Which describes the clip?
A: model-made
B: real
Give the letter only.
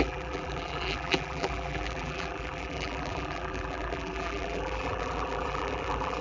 A